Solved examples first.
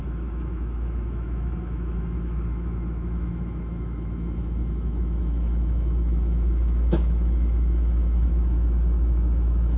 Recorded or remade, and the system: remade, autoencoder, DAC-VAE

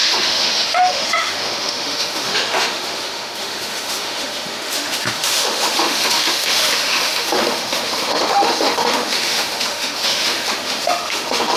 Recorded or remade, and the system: remade, autoencoder, DAC-VAE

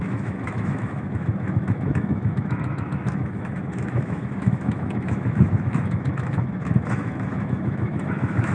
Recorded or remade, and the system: remade, autoencoder, DAC-VAE